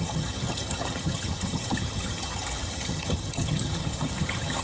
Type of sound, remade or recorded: remade